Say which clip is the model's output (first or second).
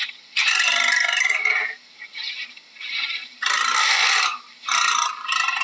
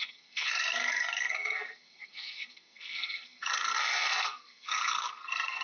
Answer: second